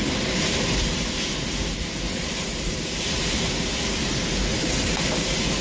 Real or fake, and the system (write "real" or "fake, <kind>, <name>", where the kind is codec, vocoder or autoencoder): real